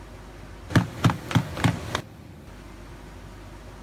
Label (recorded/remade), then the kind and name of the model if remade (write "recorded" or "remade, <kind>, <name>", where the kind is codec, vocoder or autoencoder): recorded